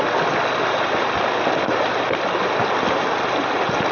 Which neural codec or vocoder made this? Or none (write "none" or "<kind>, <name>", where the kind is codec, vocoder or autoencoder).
none